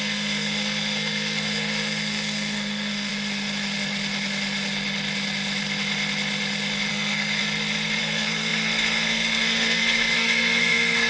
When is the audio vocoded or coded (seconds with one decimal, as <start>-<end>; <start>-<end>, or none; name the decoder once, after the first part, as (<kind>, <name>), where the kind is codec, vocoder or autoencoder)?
0.0-3.1 (codec, SNAC); 6.9-7.4; 8.0-11.1